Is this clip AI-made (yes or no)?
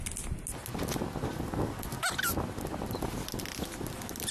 no